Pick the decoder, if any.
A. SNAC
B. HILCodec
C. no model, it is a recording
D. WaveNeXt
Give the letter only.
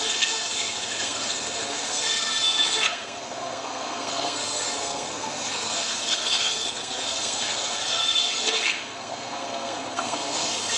A